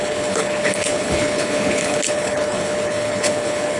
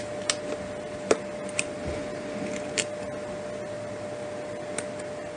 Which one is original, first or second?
second